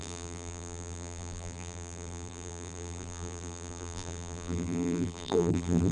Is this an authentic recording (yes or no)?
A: no